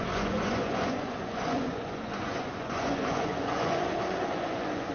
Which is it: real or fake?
fake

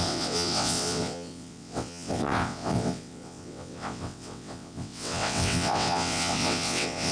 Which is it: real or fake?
fake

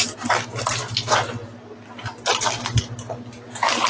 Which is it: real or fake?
real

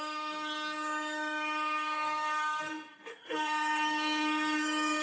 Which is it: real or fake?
fake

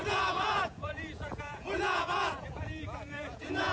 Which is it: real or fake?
fake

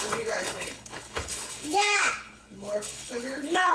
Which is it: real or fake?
fake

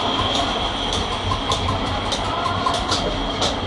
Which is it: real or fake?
real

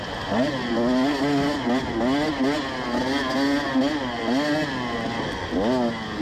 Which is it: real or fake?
real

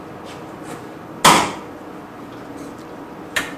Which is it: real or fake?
real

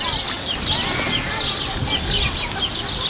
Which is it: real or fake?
real